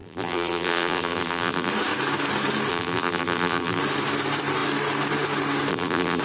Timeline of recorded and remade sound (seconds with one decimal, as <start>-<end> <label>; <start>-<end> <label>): 0.0-1.7 remade; 1.7-2.7 recorded; 2.7-3.8 remade; 3.8-5.7 recorded; 5.7-6.2 remade